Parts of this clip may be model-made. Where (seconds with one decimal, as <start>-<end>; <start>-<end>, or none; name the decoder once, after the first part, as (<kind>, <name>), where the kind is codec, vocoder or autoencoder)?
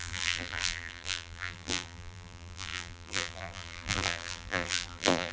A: 0.0-5.3 (vocoder, BigVGAN v2)